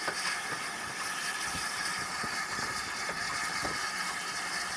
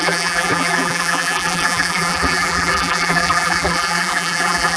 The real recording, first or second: first